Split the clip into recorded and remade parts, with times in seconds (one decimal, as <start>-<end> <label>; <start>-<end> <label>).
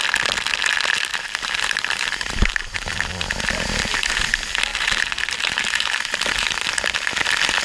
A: 0.0-1.1 recorded; 1.1-4.2 remade; 4.2-4.7 recorded; 4.7-6.7 remade; 6.7-7.6 recorded